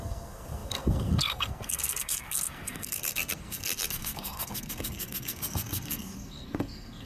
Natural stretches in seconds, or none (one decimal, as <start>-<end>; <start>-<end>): none